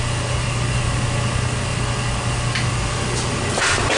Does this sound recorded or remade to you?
recorded